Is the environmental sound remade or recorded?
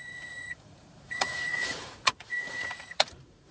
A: remade